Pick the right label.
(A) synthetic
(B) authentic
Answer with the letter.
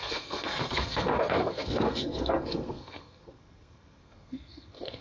A